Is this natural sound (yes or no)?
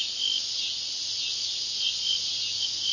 yes